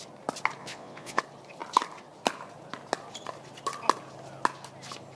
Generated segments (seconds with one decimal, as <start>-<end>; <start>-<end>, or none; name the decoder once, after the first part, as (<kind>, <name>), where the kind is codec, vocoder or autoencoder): 0.6-1.2 (vocoder, Vocos)